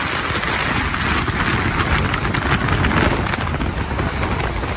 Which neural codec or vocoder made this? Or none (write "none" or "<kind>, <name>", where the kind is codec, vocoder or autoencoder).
none